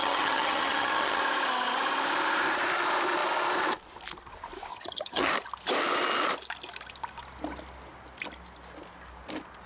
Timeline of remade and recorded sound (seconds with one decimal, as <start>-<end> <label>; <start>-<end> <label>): 0.0-1.2 remade; 1.2-4.7 recorded; 4.7-5.3 remade; 5.3-9.7 recorded